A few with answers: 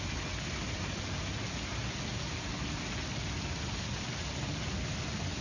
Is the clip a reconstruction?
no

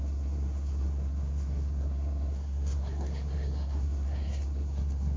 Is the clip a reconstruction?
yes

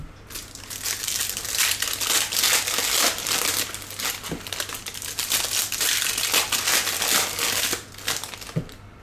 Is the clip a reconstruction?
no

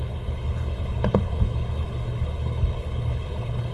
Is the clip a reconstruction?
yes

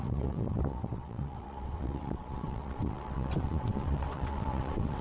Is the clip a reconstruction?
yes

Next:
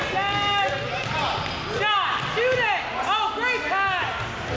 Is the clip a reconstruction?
no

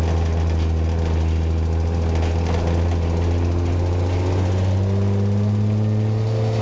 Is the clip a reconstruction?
no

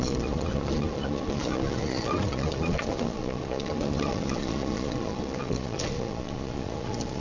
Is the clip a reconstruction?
yes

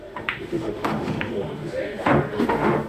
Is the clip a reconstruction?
yes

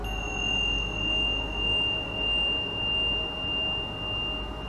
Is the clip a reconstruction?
no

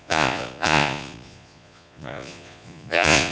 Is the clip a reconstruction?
yes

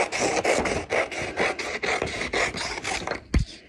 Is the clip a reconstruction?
no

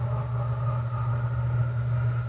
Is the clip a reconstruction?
no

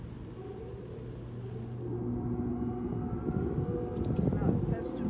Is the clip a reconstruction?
no